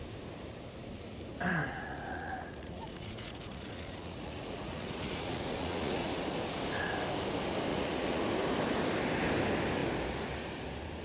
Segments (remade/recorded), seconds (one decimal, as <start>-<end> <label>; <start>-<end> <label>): 0.0-1.5 recorded; 1.5-6.2 remade; 6.2-7.7 recorded; 7.7-8.2 remade; 8.2-11.0 recorded